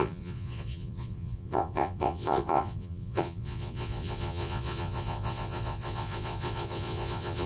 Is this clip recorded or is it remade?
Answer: remade